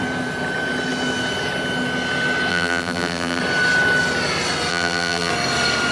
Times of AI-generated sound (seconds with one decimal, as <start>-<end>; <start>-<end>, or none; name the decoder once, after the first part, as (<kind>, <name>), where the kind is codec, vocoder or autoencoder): 2.5-3.4 (vocoder, BigVGAN v2); 4.7-5.3